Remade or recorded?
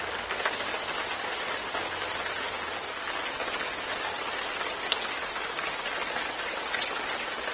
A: recorded